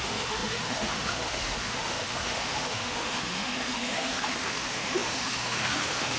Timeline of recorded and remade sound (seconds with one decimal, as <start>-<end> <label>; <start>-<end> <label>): 0.0-6.2 remade